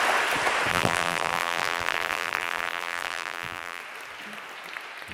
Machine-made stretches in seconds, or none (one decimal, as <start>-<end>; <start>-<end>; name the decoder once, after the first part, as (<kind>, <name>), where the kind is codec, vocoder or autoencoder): 0.7-3.8 (vocoder, BigVGAN v2)